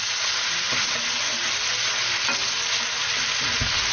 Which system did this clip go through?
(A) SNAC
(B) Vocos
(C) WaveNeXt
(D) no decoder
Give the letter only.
D